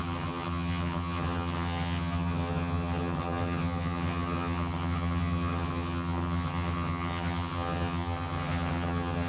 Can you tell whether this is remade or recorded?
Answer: remade